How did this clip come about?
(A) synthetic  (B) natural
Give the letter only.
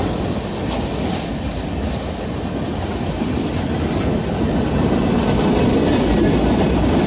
B